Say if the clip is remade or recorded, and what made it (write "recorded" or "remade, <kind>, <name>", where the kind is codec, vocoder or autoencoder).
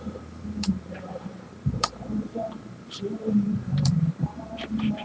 remade, vocoder, BigVGAN v2